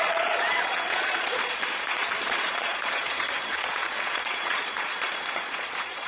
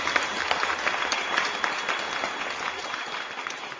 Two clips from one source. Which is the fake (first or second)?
first